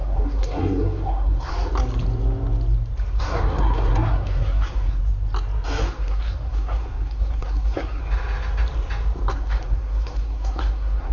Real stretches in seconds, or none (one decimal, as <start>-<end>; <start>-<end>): 1.5-3.2; 5.0-5.8; 8.0-9.3